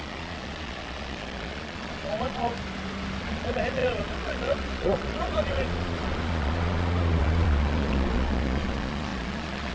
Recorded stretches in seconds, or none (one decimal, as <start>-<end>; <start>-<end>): 2.5-3.2

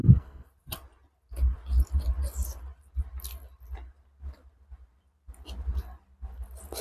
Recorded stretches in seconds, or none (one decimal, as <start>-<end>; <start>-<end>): 0.5-6.8

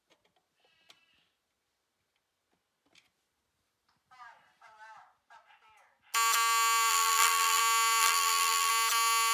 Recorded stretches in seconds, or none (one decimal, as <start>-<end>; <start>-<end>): 0.0-6.9; 7.6-8.0; 8.7-9.3

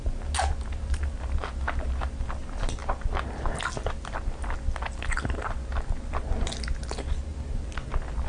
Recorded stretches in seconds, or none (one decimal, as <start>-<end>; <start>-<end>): 0.0-8.3

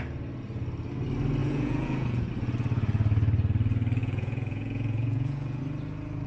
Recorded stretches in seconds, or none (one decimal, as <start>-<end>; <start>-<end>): 0.0-1.4; 2.3-4.0; 5.6-6.3

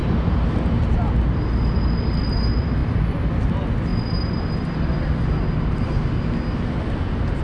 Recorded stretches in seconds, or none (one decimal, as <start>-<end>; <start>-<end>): 0.0-7.4

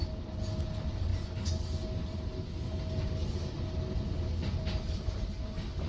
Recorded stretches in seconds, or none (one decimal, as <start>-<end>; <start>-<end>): 0.0-5.9